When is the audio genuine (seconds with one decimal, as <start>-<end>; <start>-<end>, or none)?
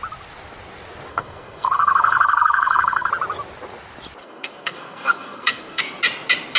0.0-1.1; 3.1-4.2; 5.8-6.6